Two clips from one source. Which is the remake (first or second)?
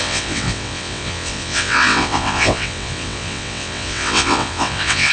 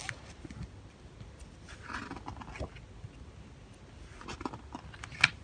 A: first